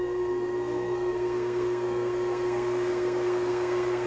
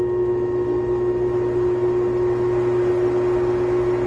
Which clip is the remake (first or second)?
first